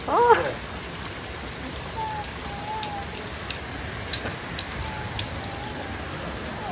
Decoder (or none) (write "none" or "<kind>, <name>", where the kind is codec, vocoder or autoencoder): none